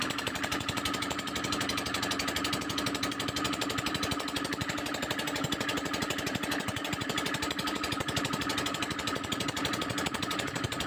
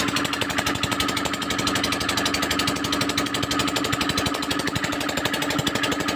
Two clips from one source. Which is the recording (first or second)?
second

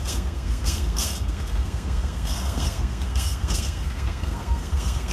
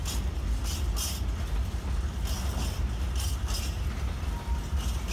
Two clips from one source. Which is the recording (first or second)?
second